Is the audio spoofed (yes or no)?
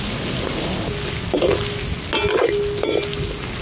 no